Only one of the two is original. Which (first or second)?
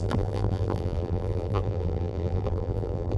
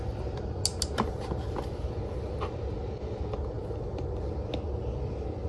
second